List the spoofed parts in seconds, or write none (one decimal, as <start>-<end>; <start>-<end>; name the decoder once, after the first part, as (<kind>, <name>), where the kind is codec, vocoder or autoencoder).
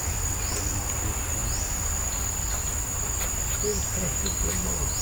none